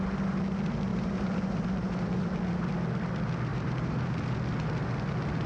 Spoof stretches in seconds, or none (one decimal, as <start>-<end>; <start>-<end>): 0.9-2.3; 3.5-4.1